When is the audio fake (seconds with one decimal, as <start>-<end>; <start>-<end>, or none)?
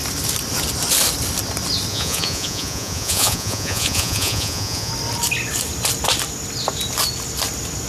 1.9-4.9